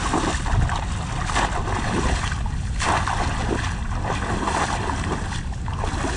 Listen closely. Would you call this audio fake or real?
real